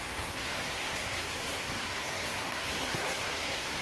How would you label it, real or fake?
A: fake